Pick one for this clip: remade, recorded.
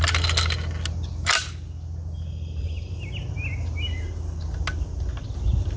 recorded